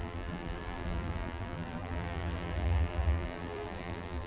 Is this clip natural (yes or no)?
no